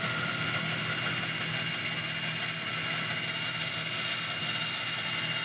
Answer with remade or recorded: recorded